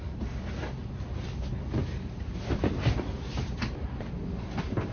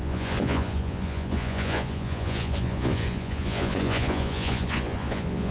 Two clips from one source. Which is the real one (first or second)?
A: first